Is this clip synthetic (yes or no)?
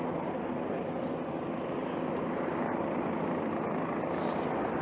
no